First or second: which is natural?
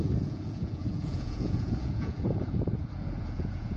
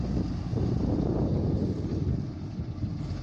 second